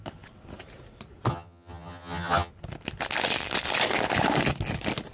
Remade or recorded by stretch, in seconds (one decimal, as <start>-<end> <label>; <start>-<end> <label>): 0.0-1.3 recorded; 1.3-2.5 remade; 2.5-5.1 recorded